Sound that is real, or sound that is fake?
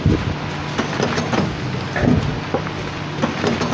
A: real